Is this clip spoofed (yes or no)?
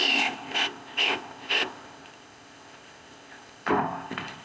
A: yes